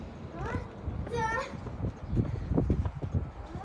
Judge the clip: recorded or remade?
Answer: recorded